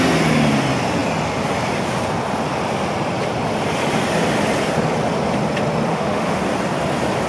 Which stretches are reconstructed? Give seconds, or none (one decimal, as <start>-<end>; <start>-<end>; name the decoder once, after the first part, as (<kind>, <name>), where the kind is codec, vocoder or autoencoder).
5.9-6.4 (autoencoder, DAC-VAE)